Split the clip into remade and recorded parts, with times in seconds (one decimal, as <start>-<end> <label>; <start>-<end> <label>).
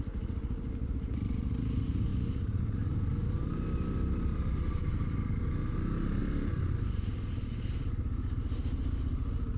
0.0-2.1 recorded; 2.1-5.5 remade; 5.5-6.2 recorded; 6.2-6.7 remade; 6.7-9.6 recorded